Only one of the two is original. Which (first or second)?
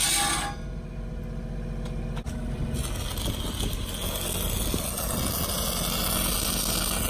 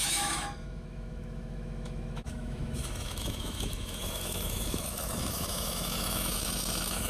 first